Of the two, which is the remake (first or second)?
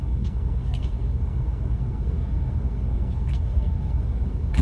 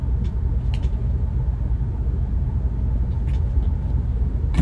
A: first